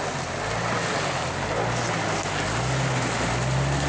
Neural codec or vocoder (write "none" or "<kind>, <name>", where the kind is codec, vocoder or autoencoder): none